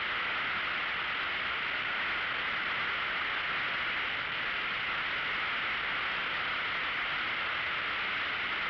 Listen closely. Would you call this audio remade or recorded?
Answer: recorded